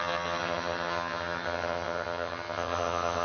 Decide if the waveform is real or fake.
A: fake